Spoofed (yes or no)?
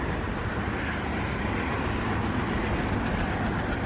no